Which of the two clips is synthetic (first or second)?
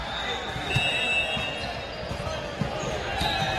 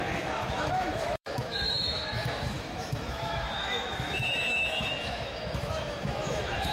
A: second